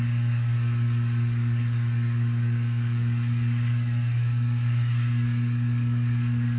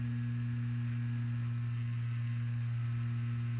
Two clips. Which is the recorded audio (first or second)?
second